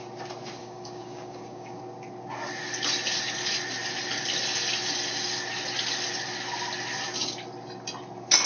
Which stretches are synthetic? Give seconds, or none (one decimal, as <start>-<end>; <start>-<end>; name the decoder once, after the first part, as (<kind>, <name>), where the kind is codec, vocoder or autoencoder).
0.6-1.8 (codec, DAC)